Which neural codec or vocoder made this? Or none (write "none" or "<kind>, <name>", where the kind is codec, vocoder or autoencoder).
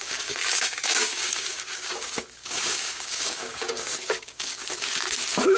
codec, DAC